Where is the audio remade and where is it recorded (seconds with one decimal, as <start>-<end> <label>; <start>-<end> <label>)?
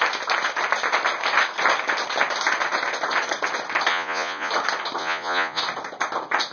0.0-3.9 recorded; 3.9-4.5 remade; 4.5-5.0 recorded; 5.0-5.6 remade; 5.6-6.5 recorded